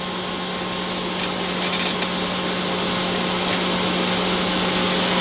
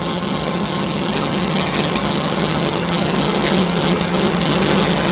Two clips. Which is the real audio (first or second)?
first